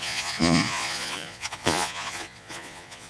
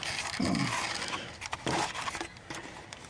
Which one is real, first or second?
second